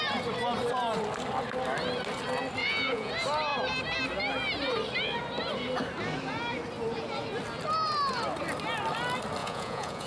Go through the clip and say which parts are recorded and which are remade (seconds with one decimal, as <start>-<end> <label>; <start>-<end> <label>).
0.0-2.6 recorded; 2.6-3.1 remade; 3.1-9.4 recorded; 9.4-10.1 remade